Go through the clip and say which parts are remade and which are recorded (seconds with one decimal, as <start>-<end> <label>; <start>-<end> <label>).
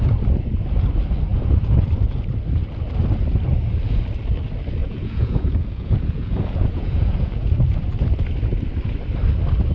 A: 0.0-1.3 recorded; 1.3-1.8 remade; 1.8-4.8 recorded; 4.8-7.5 remade; 7.5-9.7 recorded